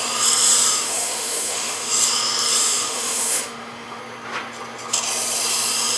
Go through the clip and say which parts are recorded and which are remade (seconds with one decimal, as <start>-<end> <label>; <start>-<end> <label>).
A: 0.0-0.7 recorded; 0.7-1.9 remade; 1.9-2.6 recorded; 2.6-4.0 remade; 4.0-6.0 recorded